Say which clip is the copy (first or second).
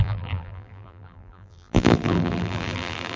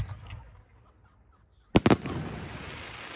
first